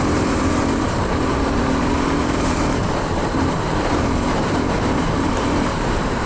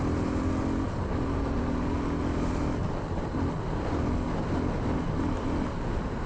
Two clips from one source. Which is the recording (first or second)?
second